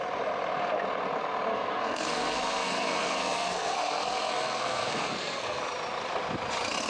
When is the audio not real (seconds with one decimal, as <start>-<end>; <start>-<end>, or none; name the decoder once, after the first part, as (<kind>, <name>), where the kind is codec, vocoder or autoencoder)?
1.5-5.6 (codec, SNAC)